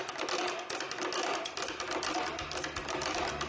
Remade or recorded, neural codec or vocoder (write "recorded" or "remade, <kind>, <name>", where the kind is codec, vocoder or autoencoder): recorded